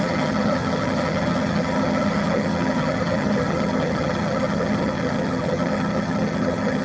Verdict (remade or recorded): remade